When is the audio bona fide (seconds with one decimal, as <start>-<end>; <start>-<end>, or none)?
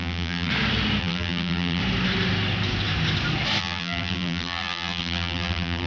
0.5-1.0; 1.8-3.6